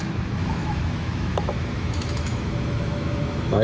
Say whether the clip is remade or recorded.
remade